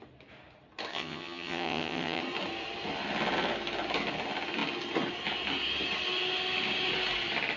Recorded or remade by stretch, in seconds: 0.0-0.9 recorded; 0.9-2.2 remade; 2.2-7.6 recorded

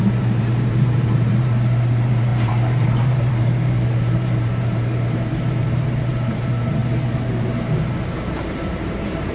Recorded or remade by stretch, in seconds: 0.0-6.8 remade; 6.8-7.4 recorded; 7.4-9.3 remade